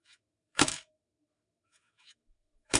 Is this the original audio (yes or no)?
no